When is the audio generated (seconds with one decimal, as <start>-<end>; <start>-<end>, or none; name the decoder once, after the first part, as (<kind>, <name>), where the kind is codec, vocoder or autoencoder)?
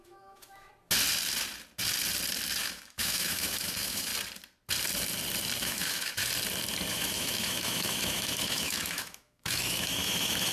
0.0-0.7 (autoencoder, DAC-VAE); 2.6-4.1; 5.6-6.2; 6.9-10.5